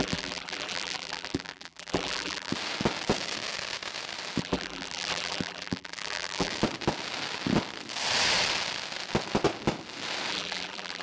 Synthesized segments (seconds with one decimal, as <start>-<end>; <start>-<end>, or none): 0.0-2.5; 4.4-6.5; 10.3-11.0